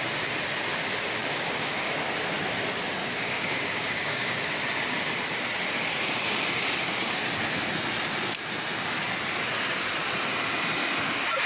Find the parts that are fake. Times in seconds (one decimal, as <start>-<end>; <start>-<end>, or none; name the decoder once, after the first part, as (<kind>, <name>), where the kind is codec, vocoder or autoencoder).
1.2-1.8 (codec, DAC); 3.0-4.4

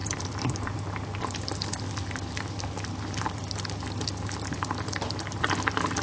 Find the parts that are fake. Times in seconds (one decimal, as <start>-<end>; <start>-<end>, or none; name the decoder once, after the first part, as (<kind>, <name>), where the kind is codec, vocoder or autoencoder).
none